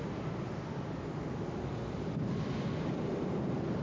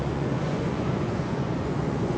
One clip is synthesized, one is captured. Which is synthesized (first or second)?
second